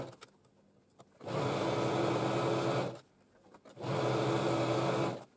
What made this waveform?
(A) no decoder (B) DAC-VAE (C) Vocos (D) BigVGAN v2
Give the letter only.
A